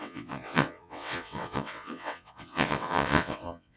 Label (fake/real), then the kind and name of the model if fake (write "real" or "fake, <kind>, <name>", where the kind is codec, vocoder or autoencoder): fake, vocoder, WaveNeXt